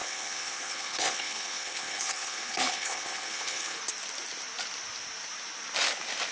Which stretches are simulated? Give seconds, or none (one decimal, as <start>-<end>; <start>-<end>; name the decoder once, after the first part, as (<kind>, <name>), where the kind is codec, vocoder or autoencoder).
0.0-3.8 (codec, HILCodec)